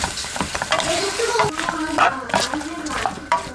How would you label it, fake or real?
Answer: fake